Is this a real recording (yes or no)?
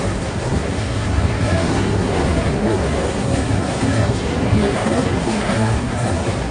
no